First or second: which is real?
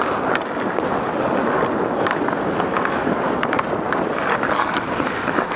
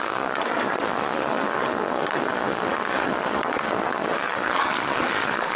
first